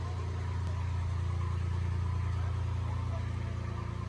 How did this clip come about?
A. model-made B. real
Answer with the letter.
B